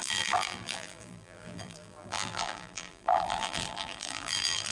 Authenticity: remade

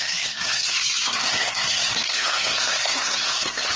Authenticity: remade